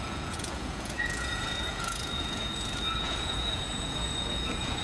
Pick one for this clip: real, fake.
fake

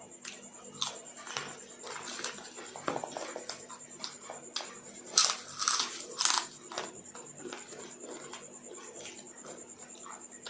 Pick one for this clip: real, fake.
real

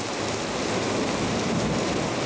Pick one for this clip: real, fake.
real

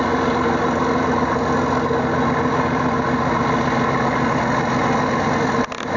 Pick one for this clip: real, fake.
real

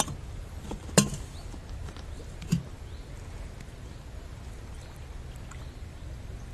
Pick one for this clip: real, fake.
real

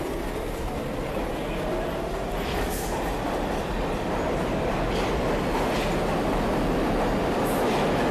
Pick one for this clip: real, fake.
real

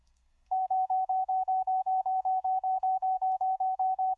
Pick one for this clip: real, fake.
fake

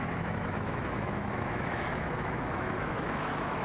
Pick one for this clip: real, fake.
fake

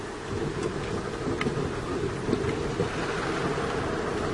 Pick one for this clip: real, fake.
real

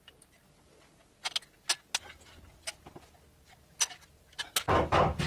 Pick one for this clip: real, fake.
real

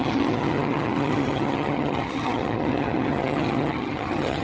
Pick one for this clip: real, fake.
fake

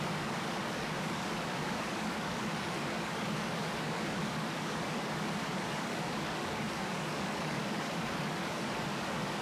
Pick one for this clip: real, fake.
fake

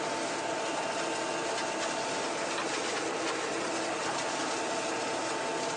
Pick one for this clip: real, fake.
real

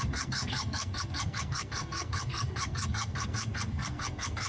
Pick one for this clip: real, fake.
fake